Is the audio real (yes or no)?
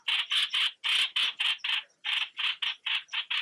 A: yes